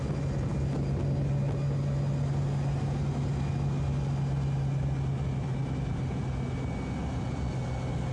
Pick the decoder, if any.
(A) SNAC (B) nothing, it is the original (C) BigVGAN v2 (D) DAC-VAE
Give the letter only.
B